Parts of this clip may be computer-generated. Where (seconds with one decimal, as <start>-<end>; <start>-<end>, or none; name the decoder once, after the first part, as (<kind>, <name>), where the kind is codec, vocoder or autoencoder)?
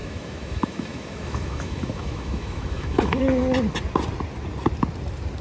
0.0-3.2 (autoencoder, DAC-VAE)